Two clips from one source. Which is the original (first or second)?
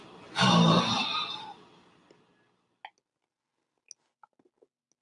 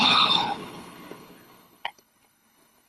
first